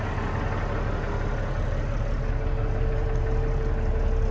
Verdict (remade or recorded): recorded